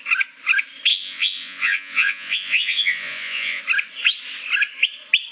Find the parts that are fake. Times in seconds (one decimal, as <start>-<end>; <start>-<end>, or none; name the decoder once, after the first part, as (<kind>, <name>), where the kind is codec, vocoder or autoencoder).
0.9-3.6 (vocoder, Vocos)